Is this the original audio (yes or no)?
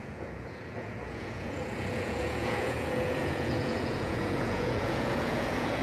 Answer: no